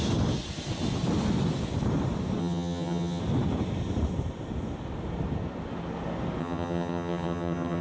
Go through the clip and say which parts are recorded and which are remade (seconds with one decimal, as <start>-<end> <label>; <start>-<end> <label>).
0.0-2.4 recorded; 2.4-3.2 remade; 3.2-6.4 recorded; 6.4-7.8 remade